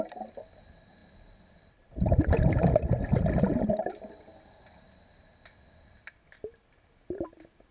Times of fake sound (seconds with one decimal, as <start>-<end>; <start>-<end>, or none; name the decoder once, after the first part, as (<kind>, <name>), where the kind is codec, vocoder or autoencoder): none